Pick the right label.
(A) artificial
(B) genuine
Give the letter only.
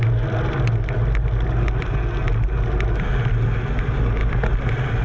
B